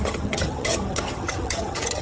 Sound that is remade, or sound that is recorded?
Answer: remade